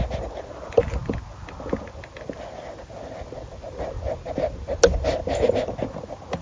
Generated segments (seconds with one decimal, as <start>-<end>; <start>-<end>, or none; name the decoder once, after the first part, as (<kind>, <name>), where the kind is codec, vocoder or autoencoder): none